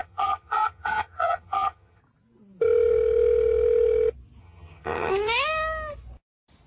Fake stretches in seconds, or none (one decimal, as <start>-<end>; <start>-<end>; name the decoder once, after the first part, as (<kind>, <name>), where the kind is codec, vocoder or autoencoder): 0.0-2.0 (vocoder, HiFi-GAN); 4.4-5.1